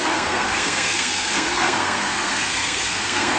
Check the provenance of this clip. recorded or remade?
remade